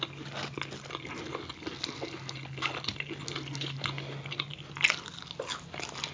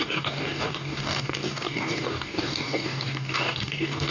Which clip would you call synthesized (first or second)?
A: second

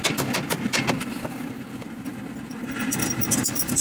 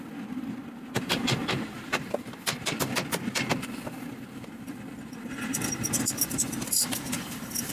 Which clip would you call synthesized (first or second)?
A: second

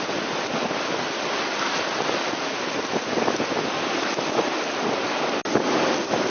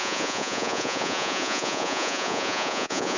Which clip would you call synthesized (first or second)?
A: second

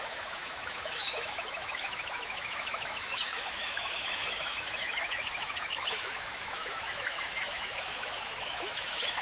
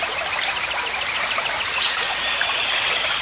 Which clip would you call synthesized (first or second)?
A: first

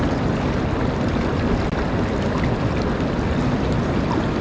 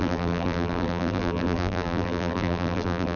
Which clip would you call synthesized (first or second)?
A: second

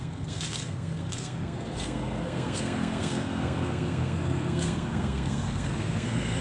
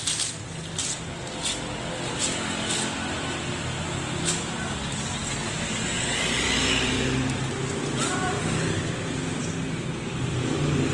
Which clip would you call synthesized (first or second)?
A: first